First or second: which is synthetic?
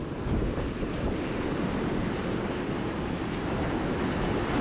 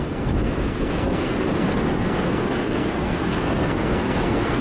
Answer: second